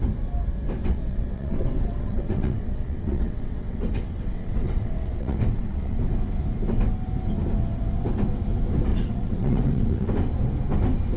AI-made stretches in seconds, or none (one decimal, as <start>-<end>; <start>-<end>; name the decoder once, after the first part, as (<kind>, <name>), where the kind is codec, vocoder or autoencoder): 0.8-6.0 (vocoder, WaveNeXt); 8.9-10.1